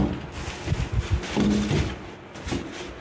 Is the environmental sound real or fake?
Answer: real